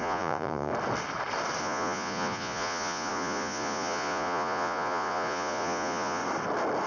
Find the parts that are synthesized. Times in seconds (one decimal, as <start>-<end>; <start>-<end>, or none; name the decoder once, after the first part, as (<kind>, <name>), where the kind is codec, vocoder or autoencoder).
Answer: 0.0-0.7 (vocoder, Vocos); 1.6-6.2

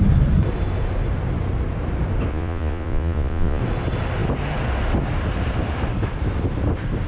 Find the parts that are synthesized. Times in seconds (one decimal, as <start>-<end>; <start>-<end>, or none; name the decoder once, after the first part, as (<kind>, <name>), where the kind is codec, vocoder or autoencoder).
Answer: 2.3-3.6 (vocoder, Vocos)